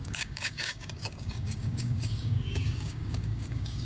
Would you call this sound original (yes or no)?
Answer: no